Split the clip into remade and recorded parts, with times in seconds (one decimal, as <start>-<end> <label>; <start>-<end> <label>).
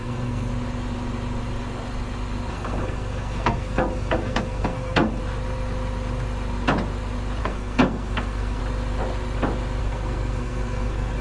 0.0-0.5 remade; 0.5-2.5 recorded; 2.5-5.2 remade; 5.2-7.4 recorded; 7.4-8.6 remade; 8.6-9.8 recorded; 9.8-11.2 remade